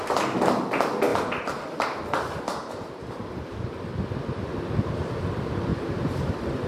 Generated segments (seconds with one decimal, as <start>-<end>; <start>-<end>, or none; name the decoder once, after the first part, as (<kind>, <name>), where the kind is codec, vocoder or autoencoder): 1.1-3.7 (vocoder, BigVGAN v2); 5.7-6.7